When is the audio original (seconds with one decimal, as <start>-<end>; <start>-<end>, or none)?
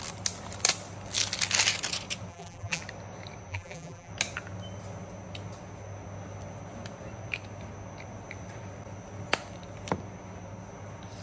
0.0-2.3; 2.8-3.5; 4.1-11.2